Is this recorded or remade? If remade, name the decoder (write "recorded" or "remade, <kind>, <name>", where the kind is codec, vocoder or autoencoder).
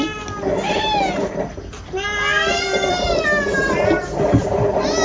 recorded